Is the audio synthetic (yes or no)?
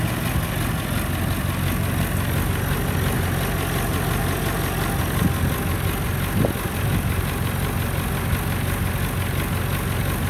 no